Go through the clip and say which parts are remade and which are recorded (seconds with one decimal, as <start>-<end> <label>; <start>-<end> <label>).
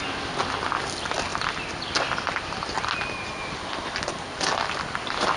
0.0-5.4 recorded